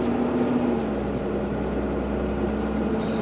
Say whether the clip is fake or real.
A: real